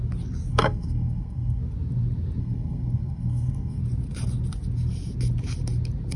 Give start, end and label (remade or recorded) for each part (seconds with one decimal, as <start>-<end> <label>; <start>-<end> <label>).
0.0-0.5 recorded; 0.5-1.6 remade; 1.6-2.4 recorded; 2.4-3.8 remade; 3.8-6.2 recorded